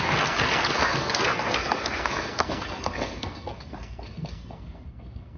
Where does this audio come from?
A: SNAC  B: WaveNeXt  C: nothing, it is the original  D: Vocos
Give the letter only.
A